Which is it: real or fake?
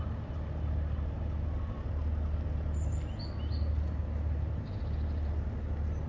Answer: real